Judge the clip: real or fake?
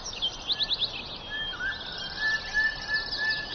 real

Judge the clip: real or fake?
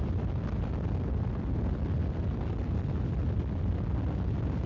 real